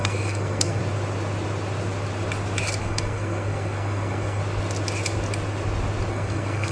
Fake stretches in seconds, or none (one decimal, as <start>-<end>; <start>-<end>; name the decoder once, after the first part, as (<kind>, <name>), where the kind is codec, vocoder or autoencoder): 0.0-0.8 (codec, SNAC); 2.8-4.4; 6.1-6.7